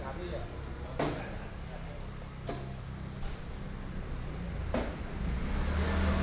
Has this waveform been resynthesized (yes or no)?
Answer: no